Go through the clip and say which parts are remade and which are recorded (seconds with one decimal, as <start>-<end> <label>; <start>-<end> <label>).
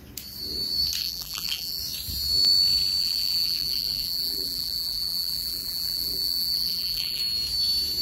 0.0-1.0 recorded; 1.0-1.8 remade; 1.8-3.0 recorded; 3.0-7.2 remade; 7.2-8.0 recorded